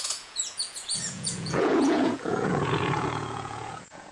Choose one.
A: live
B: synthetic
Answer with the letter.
B